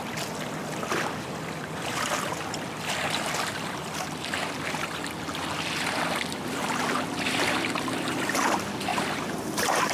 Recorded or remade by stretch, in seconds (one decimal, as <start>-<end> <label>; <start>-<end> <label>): 0.0-8.9 recorded; 8.9-9.9 remade